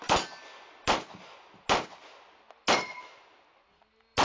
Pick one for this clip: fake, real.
real